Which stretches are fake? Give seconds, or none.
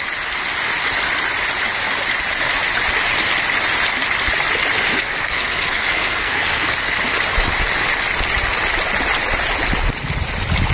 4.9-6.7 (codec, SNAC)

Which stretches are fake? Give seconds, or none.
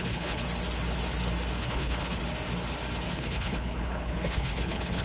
0.0-0.4 (codec, HILCodec); 1.6-2.2; 3.1-5.0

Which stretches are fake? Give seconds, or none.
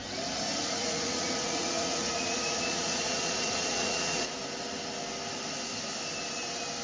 0.8-4.3 (vocoder, Vocos)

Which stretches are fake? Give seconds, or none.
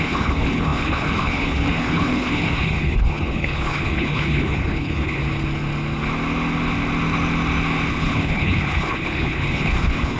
0.0-5.2 (codec, HILCodec); 7.9-10.2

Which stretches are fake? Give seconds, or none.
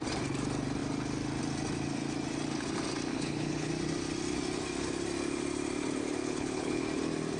3.1-3.7 (codec, HILCodec); 6.2-6.8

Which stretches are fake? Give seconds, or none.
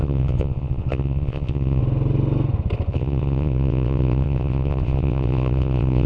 0.0-1.8 (vocoder, WaveNeXt); 2.9-6.1